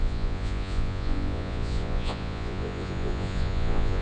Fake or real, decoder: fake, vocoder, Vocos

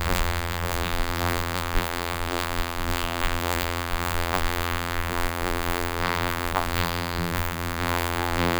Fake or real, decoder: fake, vocoder, BigVGAN v2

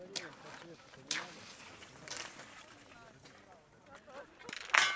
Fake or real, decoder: real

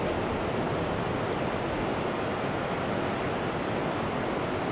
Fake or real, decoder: real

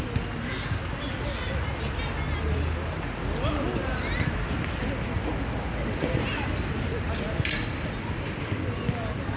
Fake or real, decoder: real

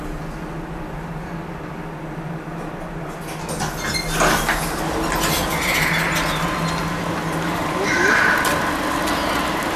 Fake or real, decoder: real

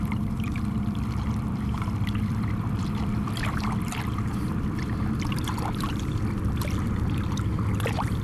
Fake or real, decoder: fake, vocoder, BigVGAN v2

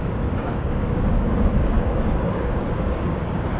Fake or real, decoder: fake, codec, DAC